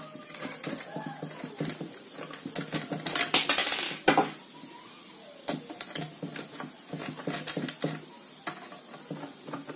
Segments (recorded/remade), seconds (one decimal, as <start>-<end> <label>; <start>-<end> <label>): 0.0-9.8 recorded